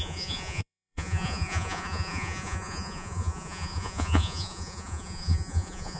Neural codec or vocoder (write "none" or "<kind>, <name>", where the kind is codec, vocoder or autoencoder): vocoder, Vocos